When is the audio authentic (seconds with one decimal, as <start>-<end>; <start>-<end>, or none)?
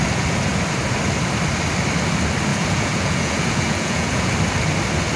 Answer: 0.0-2.5; 4.3-5.2